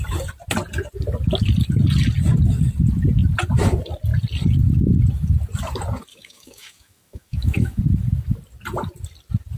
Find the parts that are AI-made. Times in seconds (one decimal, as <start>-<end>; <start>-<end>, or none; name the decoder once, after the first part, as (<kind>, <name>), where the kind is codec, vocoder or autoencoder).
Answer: 6.1-7.8 (autoencoder, DAC-VAE)